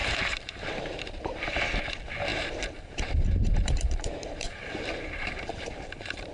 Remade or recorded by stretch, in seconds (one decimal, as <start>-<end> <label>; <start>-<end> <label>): 0.0-1.0 remade; 1.0-2.3 recorded; 2.3-6.3 remade